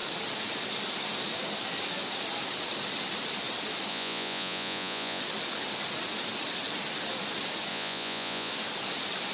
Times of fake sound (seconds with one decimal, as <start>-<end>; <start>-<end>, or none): 3.9-5.2; 7.7-8.5